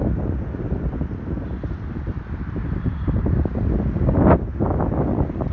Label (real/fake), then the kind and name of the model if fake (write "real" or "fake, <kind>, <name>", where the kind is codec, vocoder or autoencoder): real